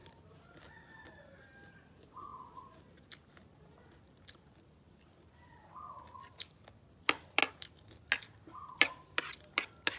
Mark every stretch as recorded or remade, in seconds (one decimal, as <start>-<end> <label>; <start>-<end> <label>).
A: 0.0-2.3 remade; 2.3-7.0 recorded; 7.0-7.4 remade; 7.4-8.7 recorded; 8.7-10.0 remade